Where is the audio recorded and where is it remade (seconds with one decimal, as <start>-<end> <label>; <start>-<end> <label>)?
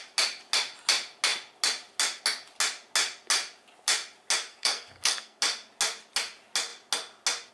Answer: 0.0-4.5 recorded; 4.5-5.4 remade; 5.4-7.5 recorded